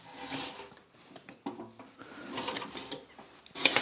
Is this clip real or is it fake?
real